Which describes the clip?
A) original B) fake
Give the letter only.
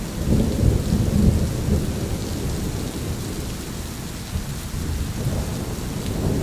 A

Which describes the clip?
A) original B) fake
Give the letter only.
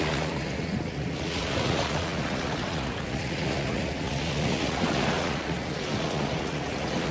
B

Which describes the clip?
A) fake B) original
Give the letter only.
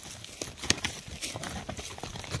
B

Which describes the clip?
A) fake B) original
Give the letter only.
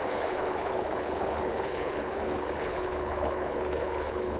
A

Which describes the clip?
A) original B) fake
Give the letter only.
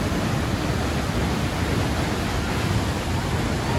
A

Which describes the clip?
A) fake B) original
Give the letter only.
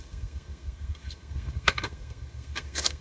A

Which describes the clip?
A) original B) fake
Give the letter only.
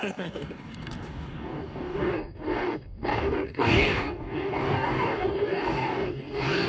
B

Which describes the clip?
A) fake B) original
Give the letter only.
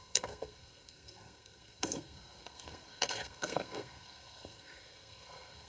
A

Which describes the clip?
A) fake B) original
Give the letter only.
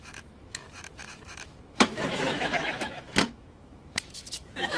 A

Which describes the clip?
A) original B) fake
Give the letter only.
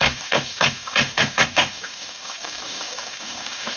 B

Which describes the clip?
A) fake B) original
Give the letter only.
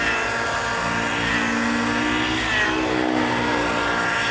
B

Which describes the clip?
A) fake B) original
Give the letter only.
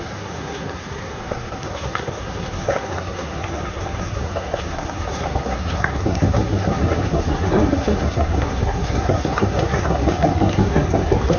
A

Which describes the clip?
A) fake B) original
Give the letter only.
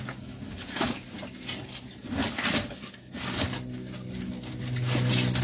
B